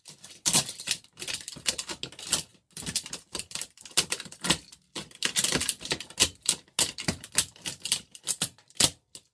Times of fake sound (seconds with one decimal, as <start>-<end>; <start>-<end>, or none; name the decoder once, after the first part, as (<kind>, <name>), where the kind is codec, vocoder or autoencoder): none